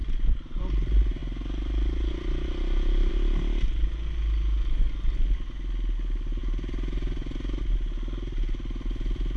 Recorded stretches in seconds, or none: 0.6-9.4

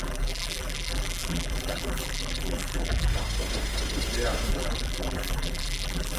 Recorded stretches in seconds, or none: 3.1-4.5

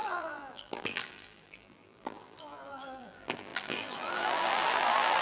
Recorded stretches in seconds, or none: none